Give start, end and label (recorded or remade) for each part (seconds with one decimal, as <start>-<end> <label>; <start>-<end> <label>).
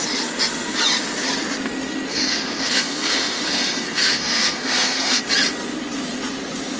0.0-2.1 recorded; 2.1-5.2 remade; 5.2-6.8 recorded